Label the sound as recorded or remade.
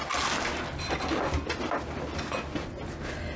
recorded